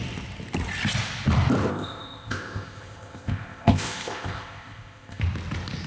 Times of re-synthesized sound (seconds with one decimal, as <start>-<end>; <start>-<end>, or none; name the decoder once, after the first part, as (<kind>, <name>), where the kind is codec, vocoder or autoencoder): 1.7-5.2 (codec, ZipCodec)